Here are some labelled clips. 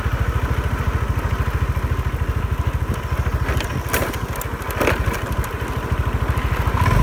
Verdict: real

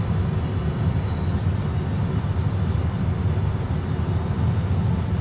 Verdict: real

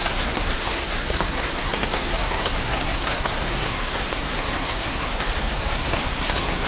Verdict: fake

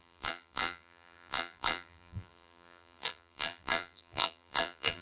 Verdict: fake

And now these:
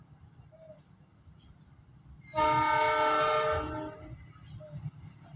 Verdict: real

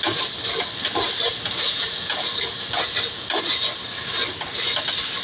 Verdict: real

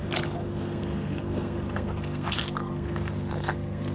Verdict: fake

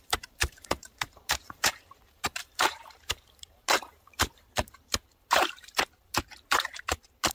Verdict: fake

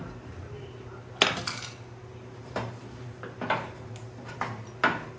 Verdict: real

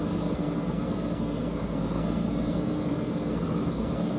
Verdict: fake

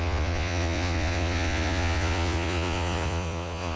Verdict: fake